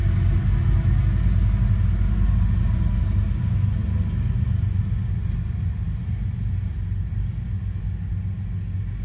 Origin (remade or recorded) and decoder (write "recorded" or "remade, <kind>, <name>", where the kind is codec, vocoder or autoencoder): recorded